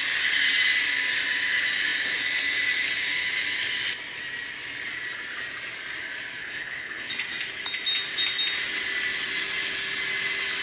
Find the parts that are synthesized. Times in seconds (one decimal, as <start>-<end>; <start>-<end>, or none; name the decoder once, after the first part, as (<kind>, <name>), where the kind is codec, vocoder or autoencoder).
6.4-7.1 (codec, HILCodec)